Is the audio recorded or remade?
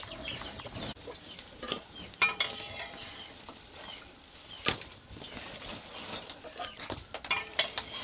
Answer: remade